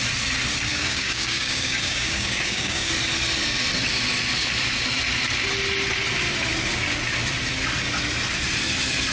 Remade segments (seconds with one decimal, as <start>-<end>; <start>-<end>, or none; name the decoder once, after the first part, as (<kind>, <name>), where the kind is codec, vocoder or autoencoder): 0.7-2.9 (codec, DAC)